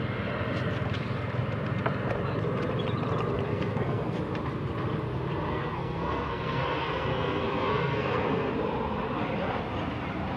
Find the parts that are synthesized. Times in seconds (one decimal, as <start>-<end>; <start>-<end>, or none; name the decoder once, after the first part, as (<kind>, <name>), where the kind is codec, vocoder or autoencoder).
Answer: 3.5-4.2 (codec, SNAC); 5.5-8.5